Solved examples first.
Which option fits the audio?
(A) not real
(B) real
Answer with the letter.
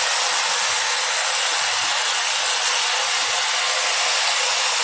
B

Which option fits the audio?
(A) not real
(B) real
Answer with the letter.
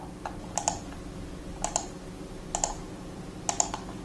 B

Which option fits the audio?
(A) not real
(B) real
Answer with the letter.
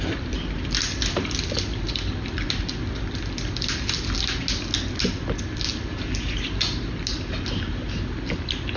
B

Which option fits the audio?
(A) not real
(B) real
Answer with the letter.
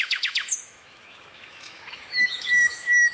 A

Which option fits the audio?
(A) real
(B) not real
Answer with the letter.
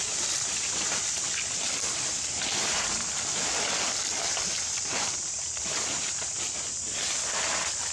A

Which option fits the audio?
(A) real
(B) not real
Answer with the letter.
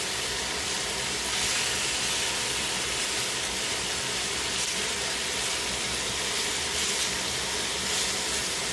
A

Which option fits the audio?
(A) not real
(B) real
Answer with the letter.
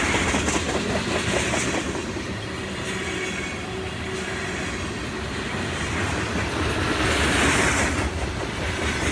B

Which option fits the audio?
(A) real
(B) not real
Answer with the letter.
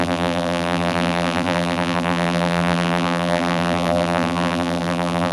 B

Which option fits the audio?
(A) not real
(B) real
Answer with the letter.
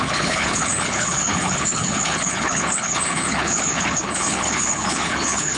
A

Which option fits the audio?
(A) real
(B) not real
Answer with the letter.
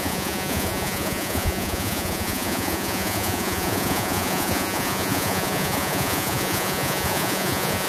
B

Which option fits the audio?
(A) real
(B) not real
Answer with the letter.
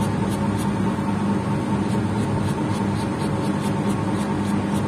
A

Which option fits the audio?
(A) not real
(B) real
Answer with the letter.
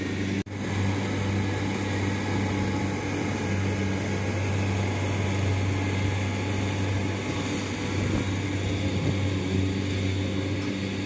B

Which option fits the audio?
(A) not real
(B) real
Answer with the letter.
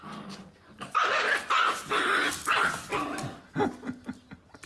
B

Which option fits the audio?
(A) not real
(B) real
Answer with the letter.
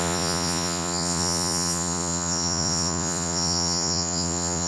A